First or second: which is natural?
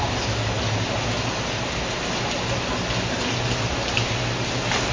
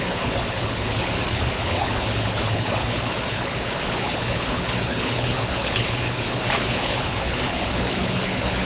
first